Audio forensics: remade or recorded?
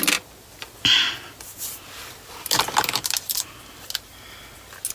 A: recorded